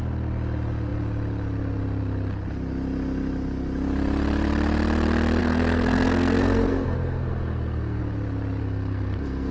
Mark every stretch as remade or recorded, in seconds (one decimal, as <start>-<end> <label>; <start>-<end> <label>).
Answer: 0.0-5.4 recorded; 5.4-8.0 remade; 8.0-8.6 recorded; 8.6-9.5 remade